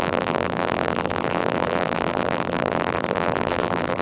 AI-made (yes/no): yes